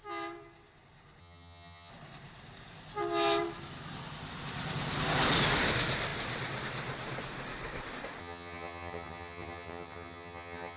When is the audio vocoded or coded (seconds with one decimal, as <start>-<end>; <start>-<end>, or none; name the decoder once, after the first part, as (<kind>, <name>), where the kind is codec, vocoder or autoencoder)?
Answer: 1.2-1.9 (vocoder, HiFi-GAN); 8.2-10.8